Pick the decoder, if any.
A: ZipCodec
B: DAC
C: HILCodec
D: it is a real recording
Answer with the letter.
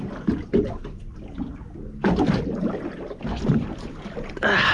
D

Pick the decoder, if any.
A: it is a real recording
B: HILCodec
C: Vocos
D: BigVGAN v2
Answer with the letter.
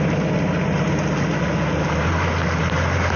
A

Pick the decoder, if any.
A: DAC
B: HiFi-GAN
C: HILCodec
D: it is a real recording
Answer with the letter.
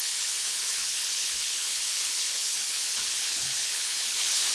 C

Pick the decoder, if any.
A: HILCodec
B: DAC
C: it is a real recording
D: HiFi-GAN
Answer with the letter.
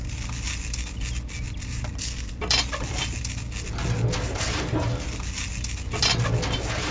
C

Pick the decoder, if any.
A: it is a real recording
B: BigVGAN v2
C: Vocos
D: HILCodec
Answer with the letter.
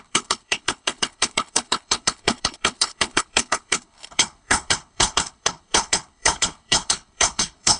D